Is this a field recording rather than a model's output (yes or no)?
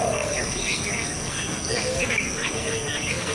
no